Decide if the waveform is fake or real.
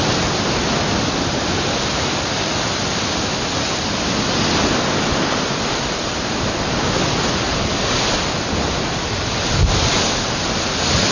real